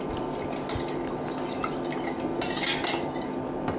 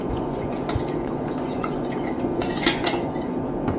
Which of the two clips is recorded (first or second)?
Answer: first